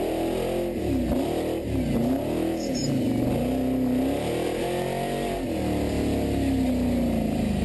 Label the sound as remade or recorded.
recorded